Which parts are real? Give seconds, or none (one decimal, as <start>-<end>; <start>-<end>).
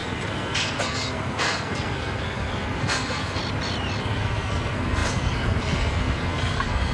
3.4-4.0